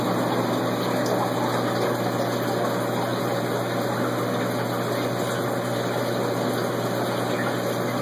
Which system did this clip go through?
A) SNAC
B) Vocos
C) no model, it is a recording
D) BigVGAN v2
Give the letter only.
C